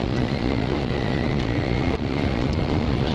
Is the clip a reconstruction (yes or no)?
yes